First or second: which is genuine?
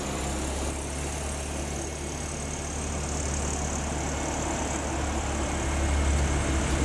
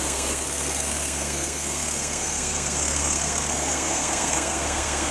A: first